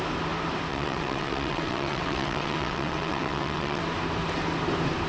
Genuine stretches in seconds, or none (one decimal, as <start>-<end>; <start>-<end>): 0.0-0.7; 3.8-5.1